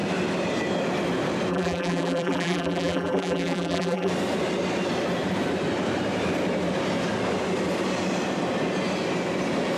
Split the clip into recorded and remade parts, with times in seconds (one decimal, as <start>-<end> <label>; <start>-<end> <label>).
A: 0.0-1.5 recorded; 1.5-4.1 remade; 4.1-9.8 recorded